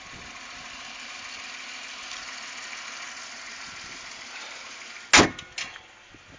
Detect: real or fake real